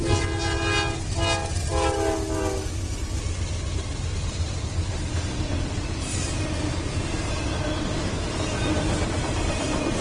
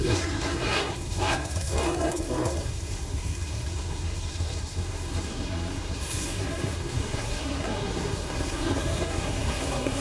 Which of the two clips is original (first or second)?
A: first